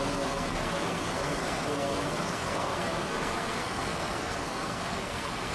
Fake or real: fake